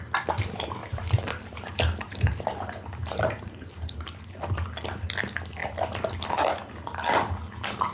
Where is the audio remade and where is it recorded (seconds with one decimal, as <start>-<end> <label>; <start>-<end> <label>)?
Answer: 0.0-0.8 recorded; 0.8-4.4 remade; 4.4-7.9 recorded